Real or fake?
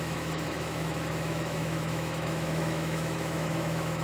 fake